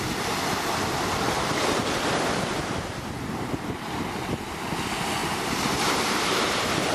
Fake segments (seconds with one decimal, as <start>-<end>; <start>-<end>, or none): 5.2-6.9